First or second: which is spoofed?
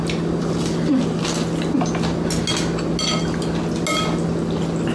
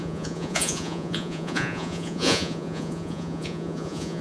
second